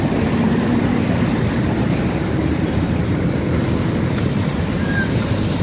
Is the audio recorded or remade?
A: remade